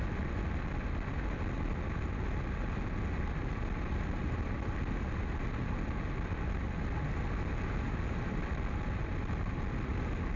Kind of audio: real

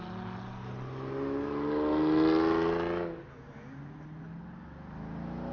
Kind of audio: real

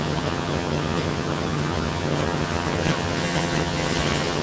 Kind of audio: fake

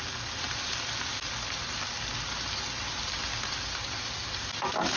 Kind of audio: real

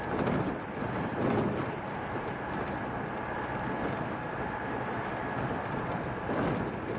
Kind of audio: real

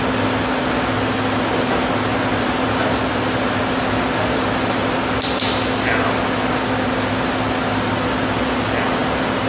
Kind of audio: real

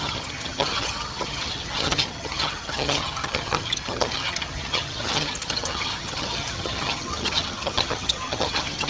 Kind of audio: fake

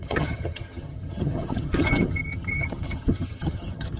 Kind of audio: fake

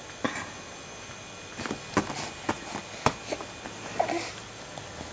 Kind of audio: real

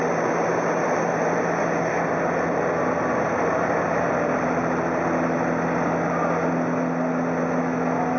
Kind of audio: real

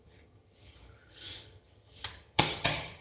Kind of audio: fake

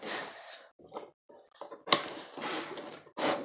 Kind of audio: real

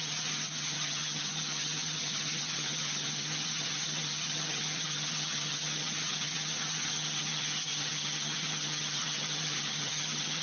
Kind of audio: fake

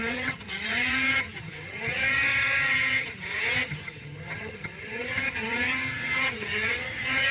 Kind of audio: fake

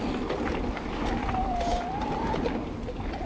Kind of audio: real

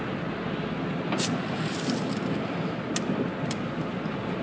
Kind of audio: real